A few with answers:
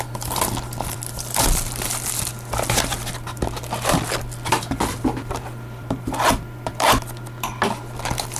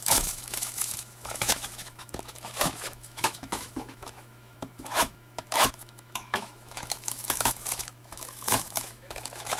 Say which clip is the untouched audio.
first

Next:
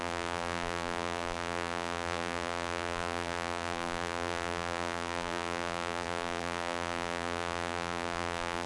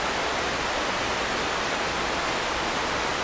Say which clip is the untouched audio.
second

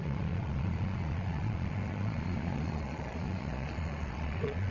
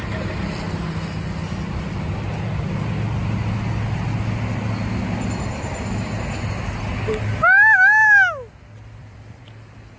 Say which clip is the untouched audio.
second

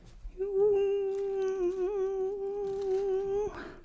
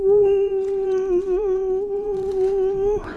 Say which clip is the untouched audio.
first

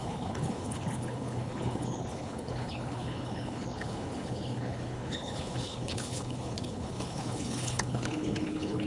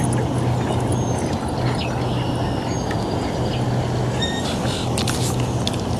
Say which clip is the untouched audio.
second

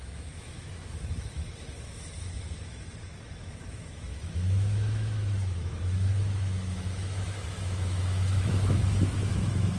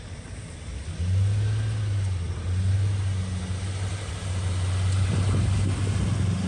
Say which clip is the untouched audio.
second